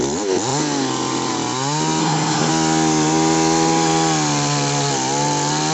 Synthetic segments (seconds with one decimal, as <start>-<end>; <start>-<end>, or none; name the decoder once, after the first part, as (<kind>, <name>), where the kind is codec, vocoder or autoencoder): 2.0-2.5 (codec, SNAC)